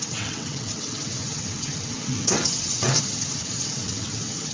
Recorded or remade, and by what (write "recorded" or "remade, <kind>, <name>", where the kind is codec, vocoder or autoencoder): remade, vocoder, WaveNeXt